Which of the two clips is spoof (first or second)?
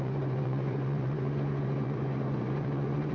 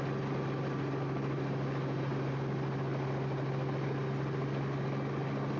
first